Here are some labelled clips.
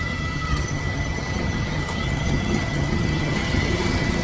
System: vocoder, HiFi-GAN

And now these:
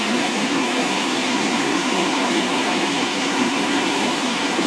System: codec, SNAC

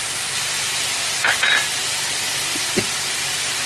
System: none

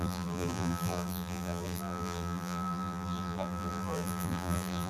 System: vocoder, BigVGAN v2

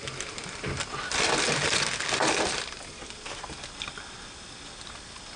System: none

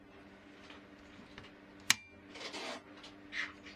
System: none